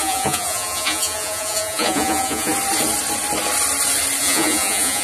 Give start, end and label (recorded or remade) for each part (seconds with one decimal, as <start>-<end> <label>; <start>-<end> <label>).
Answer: 0.0-2.5 remade; 2.5-4.2 recorded; 4.2-5.0 remade